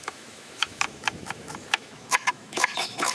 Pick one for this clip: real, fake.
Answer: fake